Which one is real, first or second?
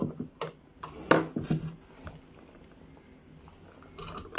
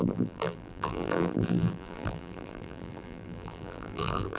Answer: first